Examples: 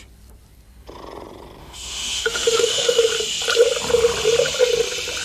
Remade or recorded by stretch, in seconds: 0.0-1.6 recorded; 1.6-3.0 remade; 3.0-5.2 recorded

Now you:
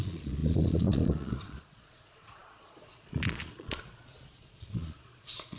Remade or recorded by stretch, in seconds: 0.0-5.6 remade

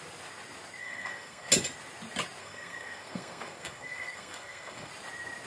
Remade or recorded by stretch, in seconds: 0.0-0.8 recorded; 0.8-1.5 remade; 1.5-2.4 recorded; 2.4-4.9 remade; 4.9-5.5 recorded

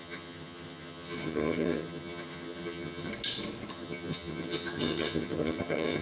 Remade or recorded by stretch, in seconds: 0.0-3.1 remade; 3.1-3.7 recorded; 3.7-6.0 remade

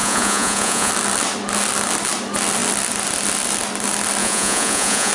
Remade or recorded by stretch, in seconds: 0.0-0.9 remade; 0.9-4.2 recorded; 4.2-5.1 remade